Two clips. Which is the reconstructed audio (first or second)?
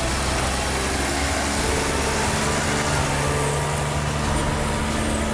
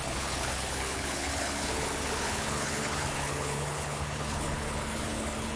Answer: second